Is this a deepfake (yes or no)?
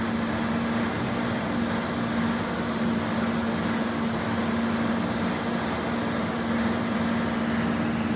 no